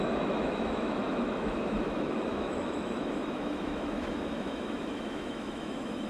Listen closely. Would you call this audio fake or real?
fake